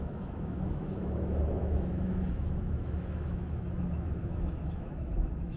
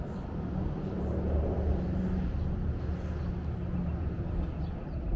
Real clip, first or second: second